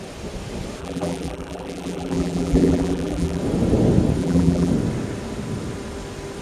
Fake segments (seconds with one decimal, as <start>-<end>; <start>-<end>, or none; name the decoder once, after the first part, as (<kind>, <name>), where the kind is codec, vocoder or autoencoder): 0.8-3.4 (vocoder, BigVGAN v2); 4.2-4.7

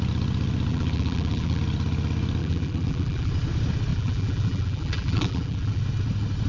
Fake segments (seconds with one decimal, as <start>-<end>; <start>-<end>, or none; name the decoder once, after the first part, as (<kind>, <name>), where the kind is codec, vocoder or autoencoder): 0.7-1.6 (vocoder, BigVGAN v2); 2.4-3.3; 3.9-5.8